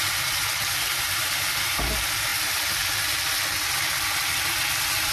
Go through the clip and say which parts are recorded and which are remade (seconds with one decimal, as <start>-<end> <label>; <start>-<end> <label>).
0.0-5.1 recorded